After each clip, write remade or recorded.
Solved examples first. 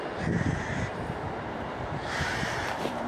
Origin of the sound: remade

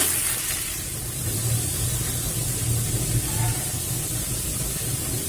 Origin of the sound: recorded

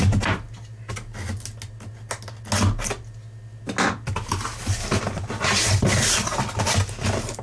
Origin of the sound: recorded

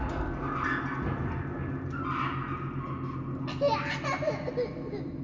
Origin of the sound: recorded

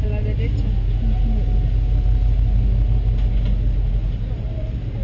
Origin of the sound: recorded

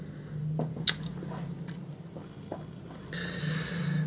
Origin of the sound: recorded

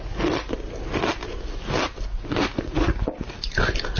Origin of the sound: recorded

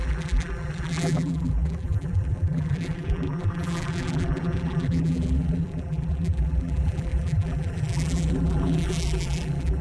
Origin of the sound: remade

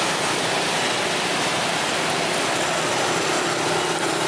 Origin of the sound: recorded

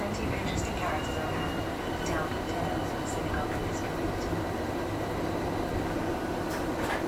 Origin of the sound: recorded